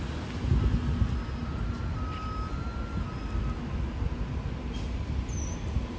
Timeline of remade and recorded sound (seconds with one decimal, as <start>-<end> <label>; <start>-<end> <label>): 0.0-6.0 recorded